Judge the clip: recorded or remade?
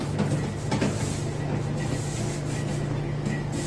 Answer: recorded